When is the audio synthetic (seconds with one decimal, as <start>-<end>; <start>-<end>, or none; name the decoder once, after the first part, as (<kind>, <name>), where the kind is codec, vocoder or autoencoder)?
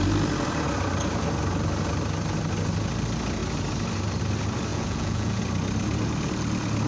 4.7-5.4 (vocoder, Vocos)